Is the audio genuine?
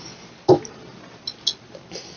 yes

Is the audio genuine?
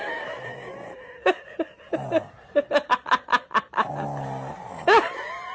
yes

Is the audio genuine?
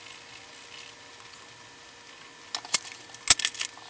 yes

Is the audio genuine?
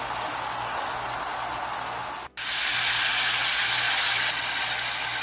yes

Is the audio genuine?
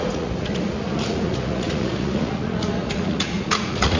no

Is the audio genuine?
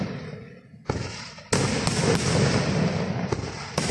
yes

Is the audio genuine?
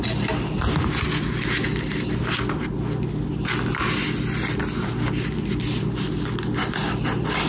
yes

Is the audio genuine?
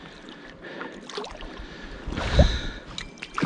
yes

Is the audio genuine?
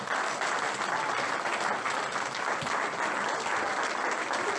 yes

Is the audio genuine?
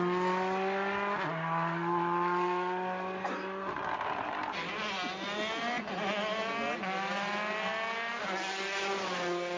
yes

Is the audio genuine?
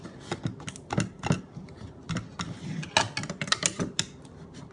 yes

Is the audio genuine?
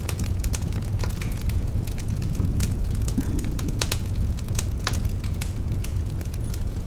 no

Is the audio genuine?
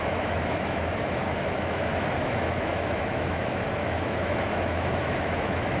no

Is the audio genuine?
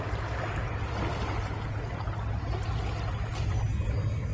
yes